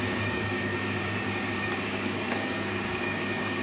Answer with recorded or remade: remade